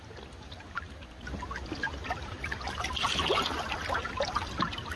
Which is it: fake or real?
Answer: real